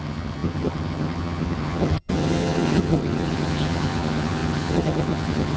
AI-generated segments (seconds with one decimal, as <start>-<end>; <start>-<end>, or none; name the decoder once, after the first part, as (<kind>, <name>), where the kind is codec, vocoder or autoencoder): 0.0-5.6 (vocoder, HiFi-GAN)